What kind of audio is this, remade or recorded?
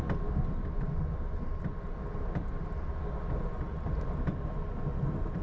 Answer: recorded